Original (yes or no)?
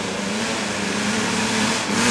yes